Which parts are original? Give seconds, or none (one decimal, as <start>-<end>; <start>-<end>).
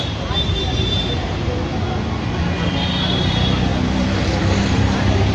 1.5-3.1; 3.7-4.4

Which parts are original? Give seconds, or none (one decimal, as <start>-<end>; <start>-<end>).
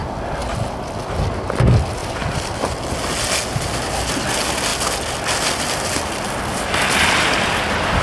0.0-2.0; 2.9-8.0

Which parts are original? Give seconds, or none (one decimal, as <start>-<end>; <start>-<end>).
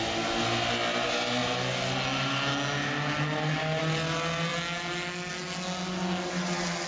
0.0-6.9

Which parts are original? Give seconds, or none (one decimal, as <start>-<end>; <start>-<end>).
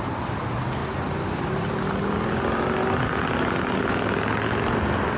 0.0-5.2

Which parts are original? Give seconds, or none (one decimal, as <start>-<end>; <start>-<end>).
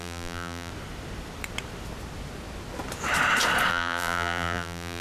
0.7-3.7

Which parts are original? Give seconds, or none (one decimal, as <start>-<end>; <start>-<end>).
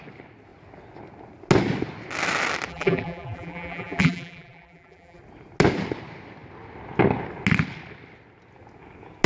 0.0-2.7; 5.2-9.3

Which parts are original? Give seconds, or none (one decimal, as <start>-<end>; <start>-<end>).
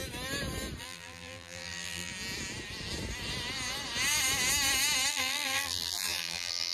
0.0-0.8; 2.1-5.1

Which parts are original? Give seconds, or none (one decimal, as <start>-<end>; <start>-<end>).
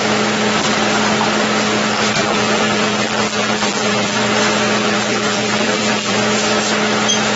0.0-2.2; 4.2-4.8; 6.2-7.4